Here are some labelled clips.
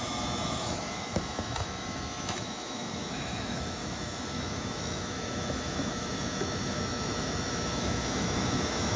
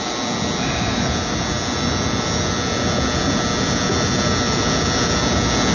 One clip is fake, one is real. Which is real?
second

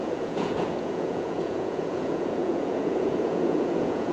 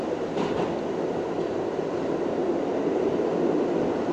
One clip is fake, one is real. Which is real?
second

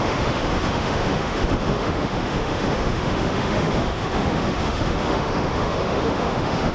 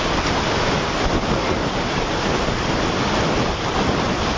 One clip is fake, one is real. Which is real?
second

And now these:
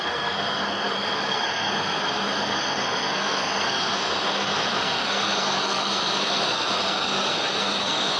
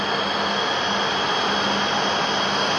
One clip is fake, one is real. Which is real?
second